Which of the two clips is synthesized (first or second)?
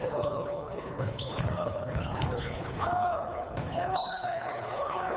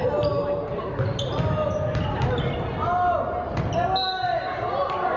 first